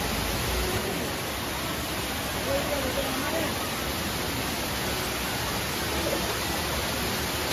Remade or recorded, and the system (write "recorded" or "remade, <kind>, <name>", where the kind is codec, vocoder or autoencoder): recorded